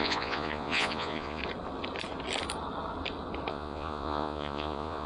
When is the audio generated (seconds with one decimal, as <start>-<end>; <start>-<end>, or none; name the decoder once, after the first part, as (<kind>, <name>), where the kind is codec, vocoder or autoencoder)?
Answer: 0.0-1.4 (vocoder, Vocos); 3.5-5.1